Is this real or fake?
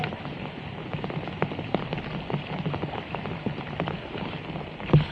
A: real